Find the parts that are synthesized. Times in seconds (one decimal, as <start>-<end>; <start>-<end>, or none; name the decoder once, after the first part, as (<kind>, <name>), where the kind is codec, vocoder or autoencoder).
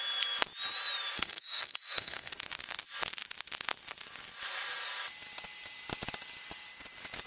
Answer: 1.1-2.3 (codec, SNAC)